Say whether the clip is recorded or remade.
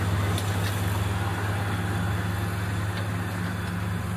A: recorded